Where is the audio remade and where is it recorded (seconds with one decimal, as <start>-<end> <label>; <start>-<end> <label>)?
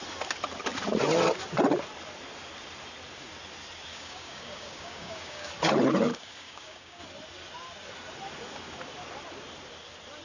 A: 0.0-3.9 recorded; 3.9-5.5 remade; 5.5-6.1 recorded; 6.1-7.0 remade; 7.0-10.2 recorded